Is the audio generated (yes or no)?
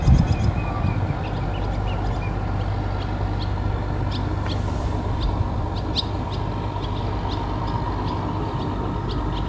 no